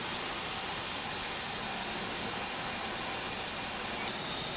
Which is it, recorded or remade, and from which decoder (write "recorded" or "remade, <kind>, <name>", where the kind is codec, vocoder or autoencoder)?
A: recorded